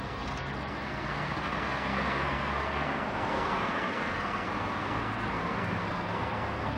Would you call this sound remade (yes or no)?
yes